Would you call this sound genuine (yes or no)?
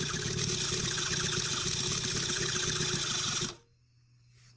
yes